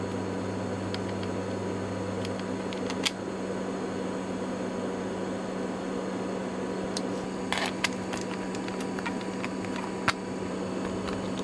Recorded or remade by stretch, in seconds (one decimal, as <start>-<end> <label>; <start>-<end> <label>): 0.0-11.4 recorded